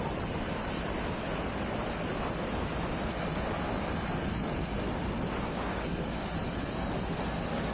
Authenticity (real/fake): real